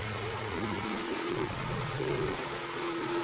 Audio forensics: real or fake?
fake